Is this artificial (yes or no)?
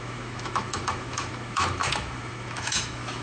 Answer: yes